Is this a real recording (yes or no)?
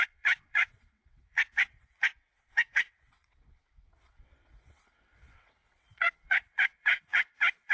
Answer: no